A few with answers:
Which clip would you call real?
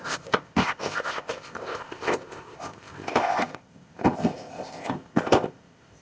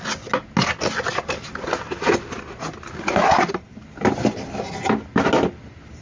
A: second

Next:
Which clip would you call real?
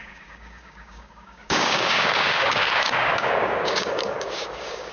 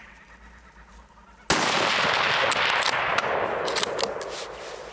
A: second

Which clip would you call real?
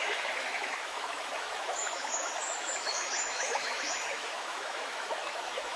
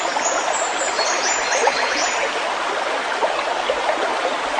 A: second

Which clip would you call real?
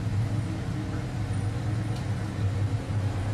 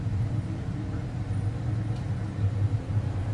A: first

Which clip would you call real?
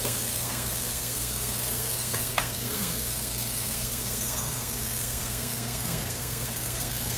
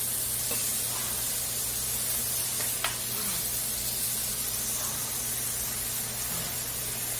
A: second